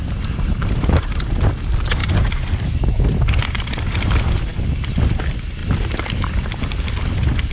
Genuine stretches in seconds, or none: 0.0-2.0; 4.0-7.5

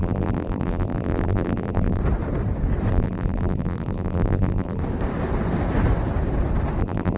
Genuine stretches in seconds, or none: 2.0-2.9; 4.8-6.8

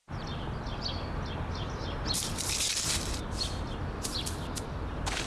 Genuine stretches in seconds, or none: none

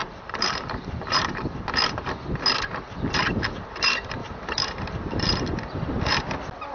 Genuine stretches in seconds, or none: 1.4-4.2; 6.2-6.7

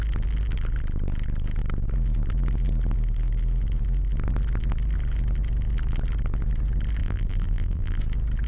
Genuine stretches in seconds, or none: 0.0-7.0; 8.0-8.5